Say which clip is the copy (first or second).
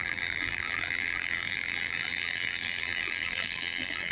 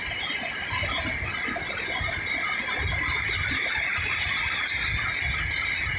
first